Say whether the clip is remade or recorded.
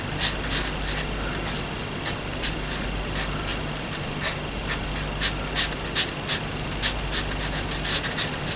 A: recorded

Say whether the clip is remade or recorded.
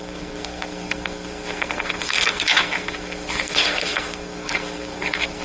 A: remade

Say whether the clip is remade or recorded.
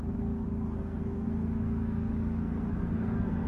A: remade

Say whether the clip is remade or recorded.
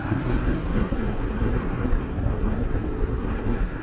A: remade